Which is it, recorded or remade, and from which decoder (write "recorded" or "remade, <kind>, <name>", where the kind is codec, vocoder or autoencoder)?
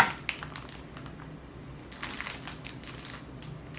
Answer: recorded